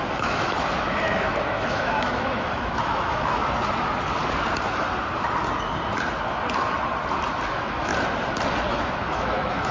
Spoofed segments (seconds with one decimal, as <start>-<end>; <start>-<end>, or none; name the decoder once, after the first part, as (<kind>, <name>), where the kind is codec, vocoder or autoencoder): 0.0-3.4 (autoencoder, DAC-VAE); 7.5-7.9; 8.7-9.7